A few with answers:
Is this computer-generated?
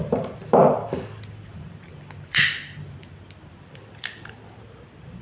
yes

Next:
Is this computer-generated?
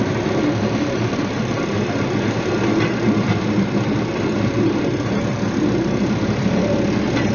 no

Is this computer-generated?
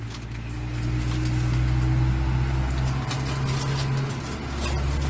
no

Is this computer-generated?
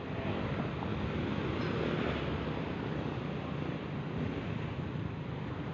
no